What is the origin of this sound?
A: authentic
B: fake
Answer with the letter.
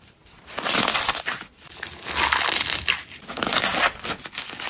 A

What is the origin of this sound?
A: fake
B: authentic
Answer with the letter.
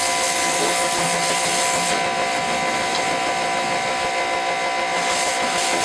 B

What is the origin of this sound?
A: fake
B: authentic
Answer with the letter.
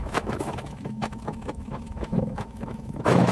A